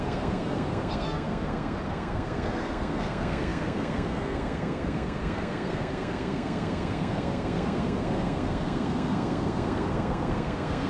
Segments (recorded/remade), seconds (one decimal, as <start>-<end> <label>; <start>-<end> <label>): 0.0-10.9 remade